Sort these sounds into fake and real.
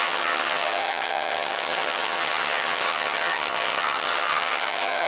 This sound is fake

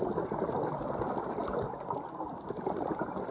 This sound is real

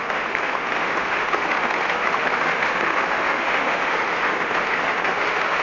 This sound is fake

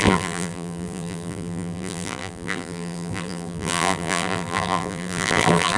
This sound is fake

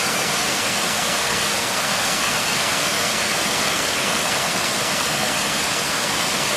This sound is fake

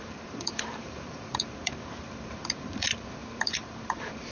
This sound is fake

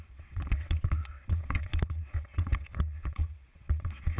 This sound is fake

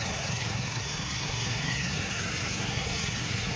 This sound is fake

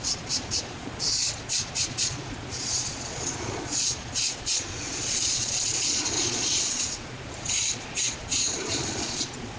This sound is fake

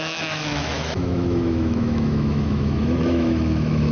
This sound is fake